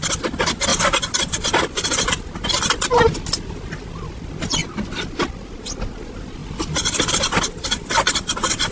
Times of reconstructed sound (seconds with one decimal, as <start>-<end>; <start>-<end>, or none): none